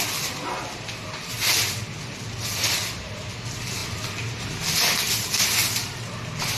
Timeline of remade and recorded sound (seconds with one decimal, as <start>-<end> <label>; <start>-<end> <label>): 0.0-2.8 recorded; 2.8-3.4 remade; 3.4-6.6 recorded